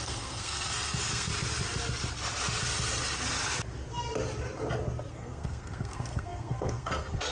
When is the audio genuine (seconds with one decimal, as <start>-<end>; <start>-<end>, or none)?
1.3-5.1